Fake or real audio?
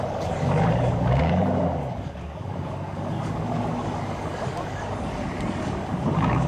fake